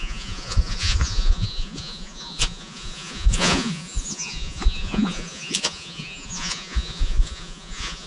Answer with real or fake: fake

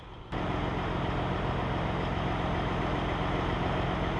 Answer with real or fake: real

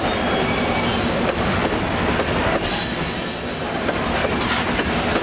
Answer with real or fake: real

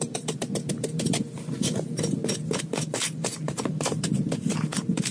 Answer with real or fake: fake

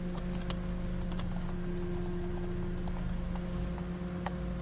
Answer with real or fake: real